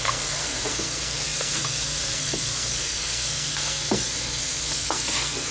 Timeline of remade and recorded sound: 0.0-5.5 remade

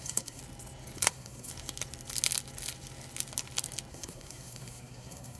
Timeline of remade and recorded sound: 0.0-0.4 remade; 0.4-1.0 recorded; 1.0-1.5 remade; 1.5-3.9 recorded; 3.9-5.4 remade

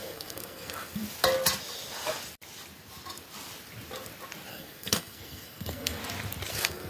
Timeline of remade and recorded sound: 0.0-1.0 remade; 1.0-4.5 recorded; 4.5-6.0 remade; 6.0-6.5 recorded; 6.5-6.9 remade

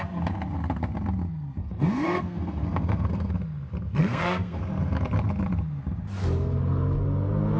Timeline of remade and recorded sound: 0.0-1.6 recorded; 1.6-3.3 remade; 3.3-4.0 recorded; 4.0-4.6 remade; 4.6-7.6 recorded

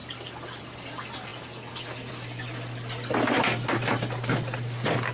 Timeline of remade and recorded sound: 0.0-5.1 recorded

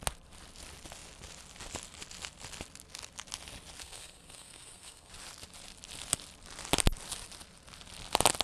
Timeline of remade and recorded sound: 0.0-3.8 recorded; 3.8-5.1 remade; 5.1-8.4 recorded

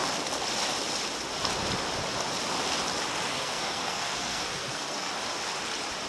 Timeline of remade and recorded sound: 0.0-3.3 recorded; 3.3-5.1 remade; 5.1-6.1 recorded

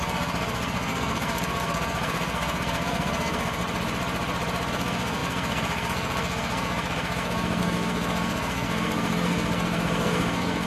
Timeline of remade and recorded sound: 0.0-3.6 remade; 3.6-4.7 recorded; 4.7-10.7 remade